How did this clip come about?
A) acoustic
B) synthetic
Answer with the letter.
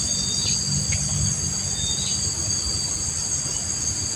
A